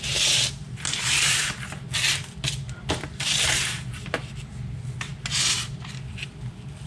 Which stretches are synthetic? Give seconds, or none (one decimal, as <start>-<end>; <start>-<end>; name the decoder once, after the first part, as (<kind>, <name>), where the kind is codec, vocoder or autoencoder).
none